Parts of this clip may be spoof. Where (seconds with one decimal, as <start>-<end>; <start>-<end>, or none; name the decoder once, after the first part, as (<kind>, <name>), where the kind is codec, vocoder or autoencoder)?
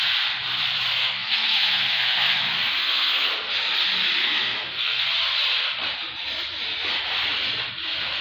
1.0-2.4 (codec, SNAC); 2.8-3.3; 4.2-5.0